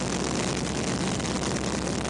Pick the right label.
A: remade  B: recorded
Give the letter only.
B